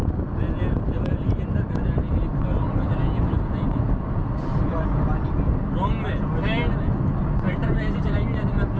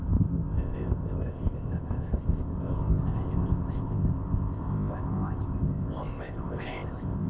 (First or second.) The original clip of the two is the first